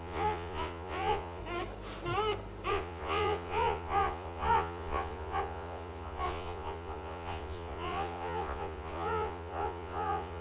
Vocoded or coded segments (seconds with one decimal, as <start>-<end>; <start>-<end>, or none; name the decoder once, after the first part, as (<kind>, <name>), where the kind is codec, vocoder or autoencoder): 0.0-1.4 (vocoder, Vocos); 2.7-10.4